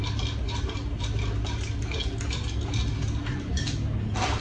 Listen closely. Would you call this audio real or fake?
real